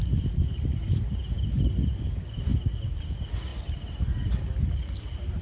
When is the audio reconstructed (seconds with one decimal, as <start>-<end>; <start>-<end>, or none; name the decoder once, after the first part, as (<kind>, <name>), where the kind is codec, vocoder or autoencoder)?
none